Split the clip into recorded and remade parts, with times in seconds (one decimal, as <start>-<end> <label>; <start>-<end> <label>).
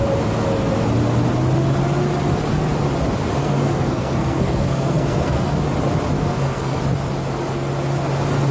0.0-3.4 recorded; 3.4-5.6 remade; 5.6-6.2 recorded; 6.2-6.8 remade; 6.8-8.5 recorded